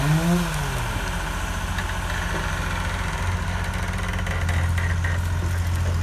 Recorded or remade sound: recorded